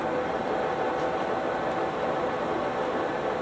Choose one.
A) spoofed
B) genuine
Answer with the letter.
B